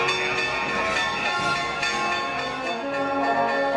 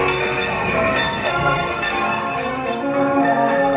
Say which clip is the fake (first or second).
second